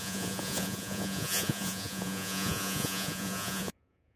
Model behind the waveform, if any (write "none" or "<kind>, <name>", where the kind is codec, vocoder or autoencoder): vocoder, Vocos